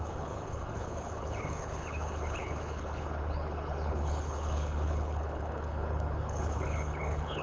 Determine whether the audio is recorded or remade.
remade